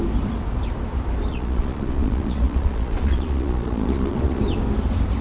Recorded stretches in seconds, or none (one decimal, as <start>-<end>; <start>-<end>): 0.0-1.3; 4.4-5.2